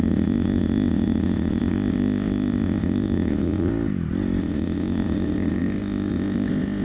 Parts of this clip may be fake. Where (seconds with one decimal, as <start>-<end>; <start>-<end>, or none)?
0.0-3.7; 4.4-6.8

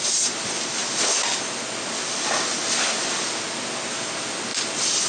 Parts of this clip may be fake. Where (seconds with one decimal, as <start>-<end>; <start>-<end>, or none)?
none

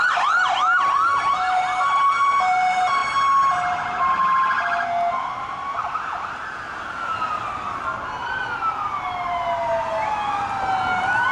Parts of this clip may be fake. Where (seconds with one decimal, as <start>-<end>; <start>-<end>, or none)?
none

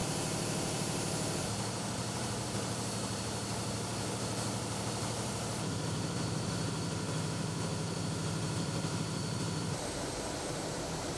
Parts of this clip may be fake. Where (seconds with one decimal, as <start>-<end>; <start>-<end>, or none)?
0.0-11.2

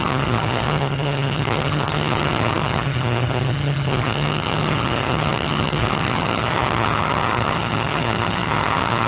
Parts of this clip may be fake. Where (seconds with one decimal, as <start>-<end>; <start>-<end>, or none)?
0.0-9.1

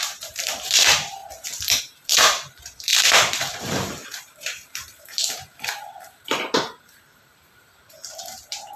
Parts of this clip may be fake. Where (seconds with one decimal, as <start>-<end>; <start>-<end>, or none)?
0.0-1.2; 1.8-8.8

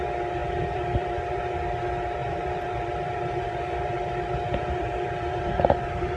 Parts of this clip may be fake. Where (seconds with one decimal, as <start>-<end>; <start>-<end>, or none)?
0.4-1.4; 2.2-6.2

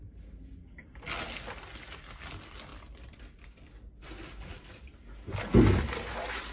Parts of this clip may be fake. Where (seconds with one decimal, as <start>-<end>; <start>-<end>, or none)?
none